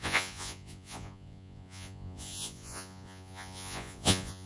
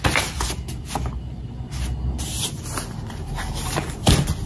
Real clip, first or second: second